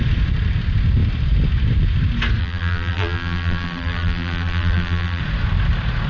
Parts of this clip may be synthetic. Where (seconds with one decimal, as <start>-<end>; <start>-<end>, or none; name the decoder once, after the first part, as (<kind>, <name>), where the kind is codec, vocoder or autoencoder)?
2.4-5.2 (vocoder, BigVGAN v2)